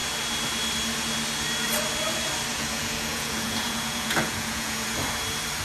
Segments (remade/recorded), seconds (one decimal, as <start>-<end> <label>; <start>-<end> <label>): 0.0-2.5 recorded; 2.5-5.0 remade; 5.0-5.6 recorded